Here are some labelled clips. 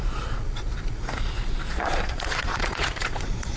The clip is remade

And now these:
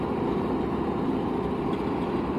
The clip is remade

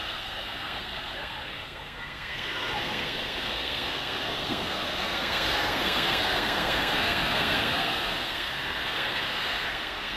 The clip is remade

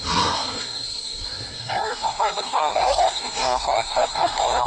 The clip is remade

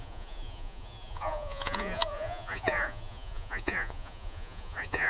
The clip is remade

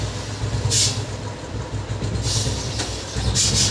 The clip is recorded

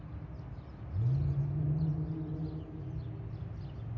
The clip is recorded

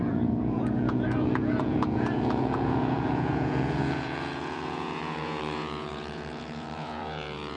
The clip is remade